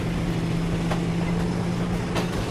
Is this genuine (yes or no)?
yes